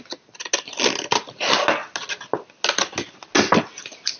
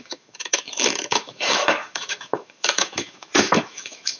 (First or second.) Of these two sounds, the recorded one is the first